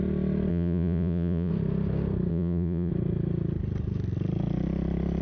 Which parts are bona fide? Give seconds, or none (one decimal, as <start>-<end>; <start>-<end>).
0.0-0.5; 1.5-2.3; 2.9-5.2

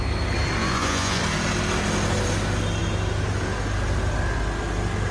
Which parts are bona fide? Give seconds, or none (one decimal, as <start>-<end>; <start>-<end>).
0.0-0.6; 1.2-5.1

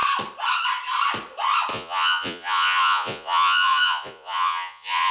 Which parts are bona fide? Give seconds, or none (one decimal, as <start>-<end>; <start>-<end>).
0.0-1.7

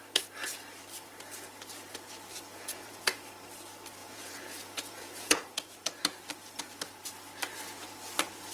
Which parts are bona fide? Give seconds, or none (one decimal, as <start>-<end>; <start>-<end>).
0.0-2.5; 3.3-4.0; 6.0-8.5

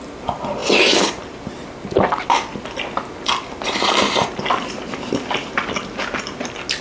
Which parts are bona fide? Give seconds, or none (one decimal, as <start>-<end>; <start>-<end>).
0.0-6.8

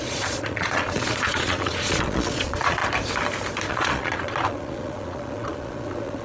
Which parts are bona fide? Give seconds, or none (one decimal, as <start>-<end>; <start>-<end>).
2.8-3.7

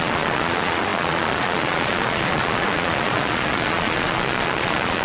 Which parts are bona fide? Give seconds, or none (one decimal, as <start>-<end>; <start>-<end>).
none

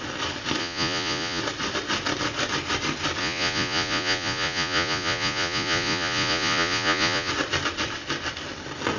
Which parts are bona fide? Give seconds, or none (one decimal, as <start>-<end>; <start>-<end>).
0.0-0.6; 1.4-3.2; 7.3-9.0